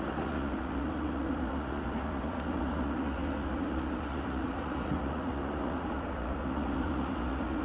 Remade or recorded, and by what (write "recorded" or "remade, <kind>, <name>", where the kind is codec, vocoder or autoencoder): remade, vocoder, Vocos